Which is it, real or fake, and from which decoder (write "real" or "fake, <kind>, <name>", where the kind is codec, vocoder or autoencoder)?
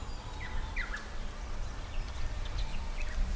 real